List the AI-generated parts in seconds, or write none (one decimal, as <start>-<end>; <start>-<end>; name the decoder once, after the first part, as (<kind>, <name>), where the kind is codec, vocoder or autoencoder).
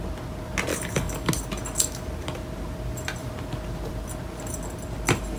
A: 0.7-1.3 (codec, DAC)